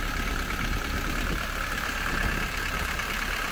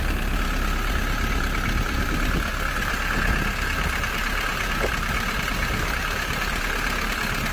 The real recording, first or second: second